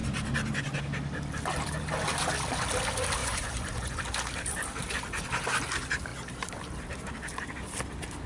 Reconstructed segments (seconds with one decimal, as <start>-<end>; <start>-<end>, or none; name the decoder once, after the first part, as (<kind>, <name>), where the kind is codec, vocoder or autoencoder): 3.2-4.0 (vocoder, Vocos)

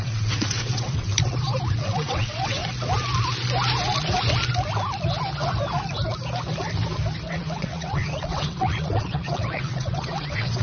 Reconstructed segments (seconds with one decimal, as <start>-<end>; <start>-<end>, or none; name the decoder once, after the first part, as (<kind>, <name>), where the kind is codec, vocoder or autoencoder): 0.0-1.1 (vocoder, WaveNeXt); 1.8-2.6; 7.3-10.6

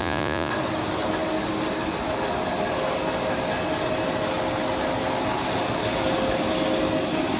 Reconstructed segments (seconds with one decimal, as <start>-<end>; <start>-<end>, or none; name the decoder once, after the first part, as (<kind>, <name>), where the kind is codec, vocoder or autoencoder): 0.0-0.5 (vocoder, Vocos)

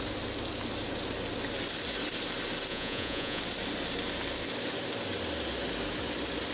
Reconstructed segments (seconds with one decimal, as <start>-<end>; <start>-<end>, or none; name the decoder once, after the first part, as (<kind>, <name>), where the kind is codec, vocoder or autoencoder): 2.7-3.4 (vocoder, Vocos)

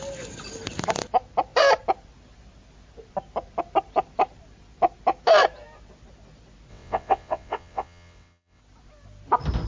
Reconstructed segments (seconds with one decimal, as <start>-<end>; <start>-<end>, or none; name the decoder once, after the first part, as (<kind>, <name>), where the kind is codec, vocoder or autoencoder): 6.7-8.6 (vocoder, WaveNeXt)